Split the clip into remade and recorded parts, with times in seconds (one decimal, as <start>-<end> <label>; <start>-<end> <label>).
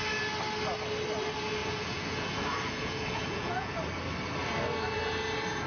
0.0-1.6 recorded; 1.6-3.7 remade; 3.7-5.7 recorded